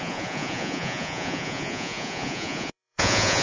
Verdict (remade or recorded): remade